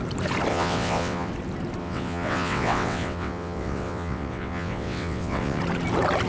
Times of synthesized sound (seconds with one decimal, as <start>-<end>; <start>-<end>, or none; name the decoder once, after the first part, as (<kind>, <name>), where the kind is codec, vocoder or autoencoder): 0.5-1.3 (vocoder, WaveNeXt); 1.8-5.6